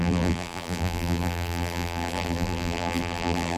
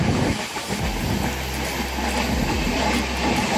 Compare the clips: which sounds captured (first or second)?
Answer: second